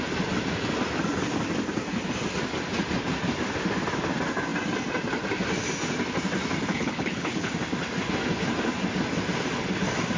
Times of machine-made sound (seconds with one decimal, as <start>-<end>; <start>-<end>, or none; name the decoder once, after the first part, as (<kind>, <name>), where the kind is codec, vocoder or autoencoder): 6.7-7.5 (codec, HILCodec)